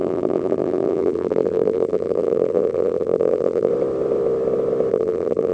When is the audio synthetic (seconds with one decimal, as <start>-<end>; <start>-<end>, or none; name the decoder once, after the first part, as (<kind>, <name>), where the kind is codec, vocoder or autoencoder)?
0.0-3.7 (vocoder, BigVGAN v2); 4.9-5.5